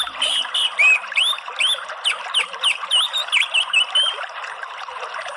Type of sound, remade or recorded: recorded